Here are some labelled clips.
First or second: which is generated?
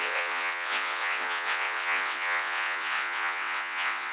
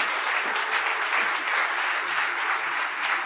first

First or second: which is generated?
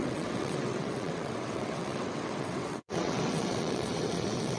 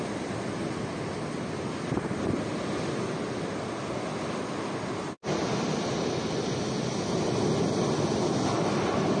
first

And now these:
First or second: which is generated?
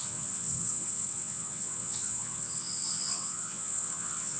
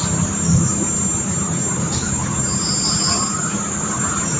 first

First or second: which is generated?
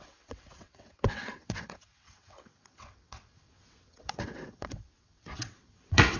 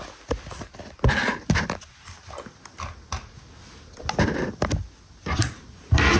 first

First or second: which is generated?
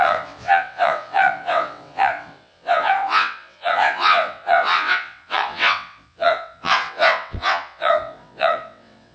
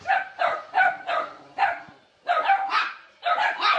first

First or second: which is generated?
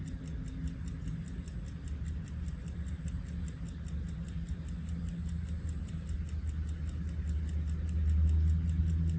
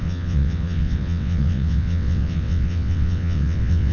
second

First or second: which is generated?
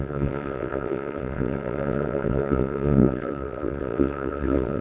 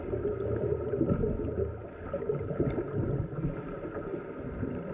first